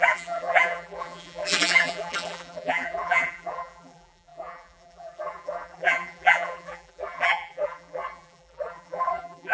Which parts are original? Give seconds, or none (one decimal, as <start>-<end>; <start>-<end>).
none